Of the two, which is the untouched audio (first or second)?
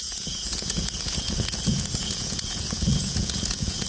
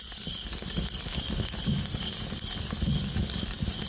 second